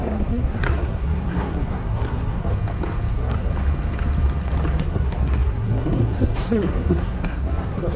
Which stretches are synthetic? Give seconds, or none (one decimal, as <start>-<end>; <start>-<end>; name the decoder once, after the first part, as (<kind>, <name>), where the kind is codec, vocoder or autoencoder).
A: 0.0-2.5 (codec, SNAC); 3.1-3.5; 4.8-8.0